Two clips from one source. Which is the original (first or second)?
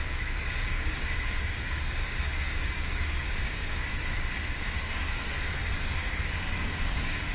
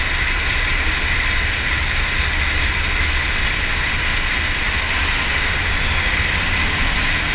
second